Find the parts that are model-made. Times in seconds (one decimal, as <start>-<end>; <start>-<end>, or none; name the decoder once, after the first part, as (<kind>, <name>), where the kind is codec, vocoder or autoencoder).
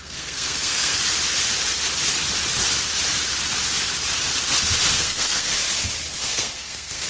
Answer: 0.0-0.9 (codec, SNAC); 4.9-5.5; 6.2-7.1